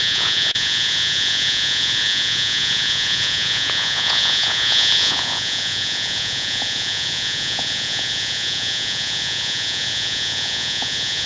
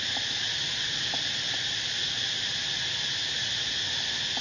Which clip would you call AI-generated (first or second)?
first